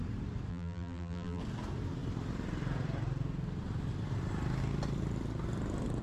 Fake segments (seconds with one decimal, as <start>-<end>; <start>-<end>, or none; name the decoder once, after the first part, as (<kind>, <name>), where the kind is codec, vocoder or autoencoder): 0.5-1.4 (vocoder, BigVGAN v2)